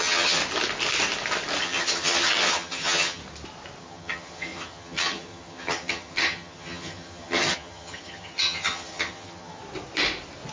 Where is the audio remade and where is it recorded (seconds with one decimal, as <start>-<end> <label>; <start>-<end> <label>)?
0.0-0.4 remade; 0.4-1.6 recorded; 1.6-3.2 remade; 3.2-3.8 recorded; 3.8-9.6 remade; 9.6-10.5 recorded